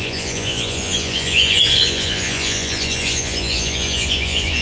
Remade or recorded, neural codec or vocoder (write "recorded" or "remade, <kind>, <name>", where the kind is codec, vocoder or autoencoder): remade, vocoder, Vocos